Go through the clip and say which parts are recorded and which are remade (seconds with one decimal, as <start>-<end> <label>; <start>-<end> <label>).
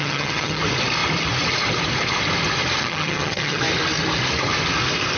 0.0-0.6 remade; 0.6-2.8 recorded; 2.8-3.6 remade; 3.6-5.2 recorded